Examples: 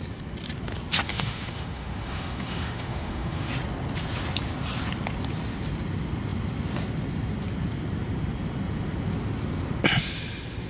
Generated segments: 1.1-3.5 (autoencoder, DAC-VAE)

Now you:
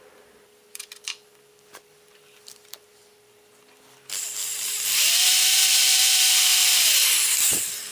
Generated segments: 0.0-7.9 (vocoder, BigVGAN v2)

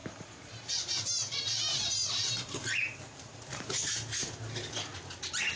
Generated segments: 0.0-3.4 (vocoder, BigVGAN v2)

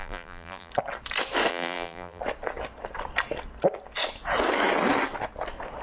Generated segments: 0.0-0.7 (vocoder, BigVGAN v2); 1.5-2.2

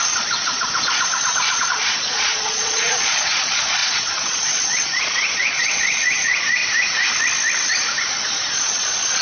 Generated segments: 0.0-6.6 (vocoder, Vocos); 8.2-9.2